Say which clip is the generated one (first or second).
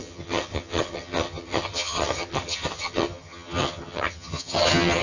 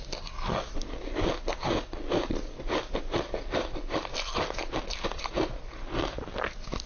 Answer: first